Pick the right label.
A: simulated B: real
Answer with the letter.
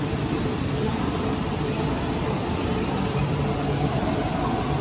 A